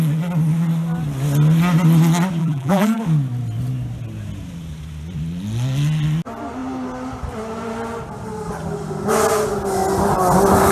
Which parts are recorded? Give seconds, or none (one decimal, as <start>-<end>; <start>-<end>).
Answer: 0.0-2.4; 3.0-10.7